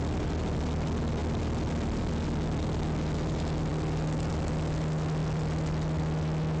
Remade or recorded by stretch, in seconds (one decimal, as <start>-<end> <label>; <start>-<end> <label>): 0.0-3.7 recorded; 3.7-4.3 remade; 4.3-6.6 recorded